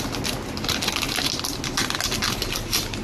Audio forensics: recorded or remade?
recorded